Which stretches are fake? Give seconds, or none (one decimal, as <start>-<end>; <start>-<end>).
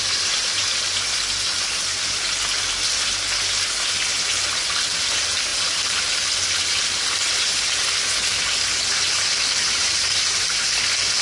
none